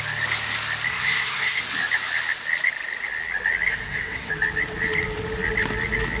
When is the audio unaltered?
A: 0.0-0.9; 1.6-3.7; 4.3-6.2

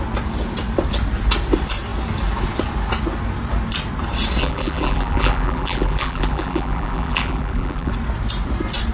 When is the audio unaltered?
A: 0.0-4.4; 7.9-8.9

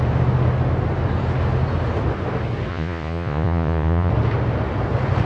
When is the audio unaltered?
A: 0.0-2.7; 4.1-5.2

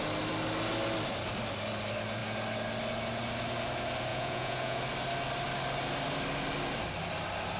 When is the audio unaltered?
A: 0.0-4.1; 4.8-7.6

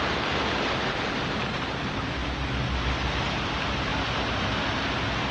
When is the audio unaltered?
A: 2.2-3.2; 3.9-5.3

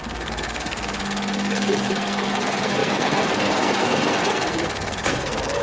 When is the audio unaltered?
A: none

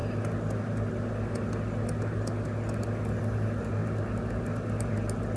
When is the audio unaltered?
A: 0.0-5.4